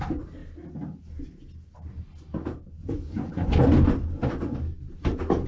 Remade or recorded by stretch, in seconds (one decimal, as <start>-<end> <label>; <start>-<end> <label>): 0.0-2.8 recorded; 2.8-3.6 remade; 3.6-5.5 recorded